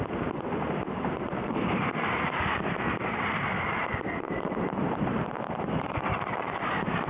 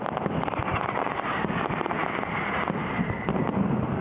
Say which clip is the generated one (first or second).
first